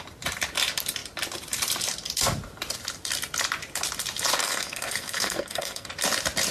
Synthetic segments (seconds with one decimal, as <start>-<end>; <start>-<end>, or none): 4.4-5.9